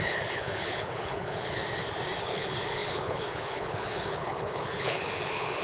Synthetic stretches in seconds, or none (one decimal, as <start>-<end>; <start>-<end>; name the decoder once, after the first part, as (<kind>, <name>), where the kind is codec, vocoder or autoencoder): 0.0-1.6 (codec, HILCodec); 2.2-5.6